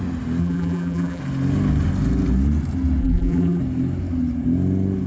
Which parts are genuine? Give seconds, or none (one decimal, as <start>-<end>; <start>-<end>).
0.0-0.4; 1.2-3.0; 3.6-5.1